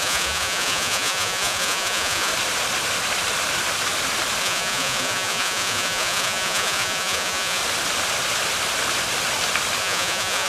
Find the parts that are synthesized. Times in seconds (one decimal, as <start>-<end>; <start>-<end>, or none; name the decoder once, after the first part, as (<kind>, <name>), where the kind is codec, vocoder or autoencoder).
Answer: 0.0-2.3 (vocoder, Vocos); 4.4-7.6; 9.8-10.5